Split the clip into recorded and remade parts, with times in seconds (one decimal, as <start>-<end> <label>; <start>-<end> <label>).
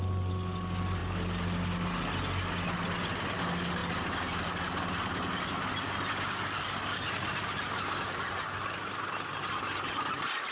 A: 0.0-10.5 recorded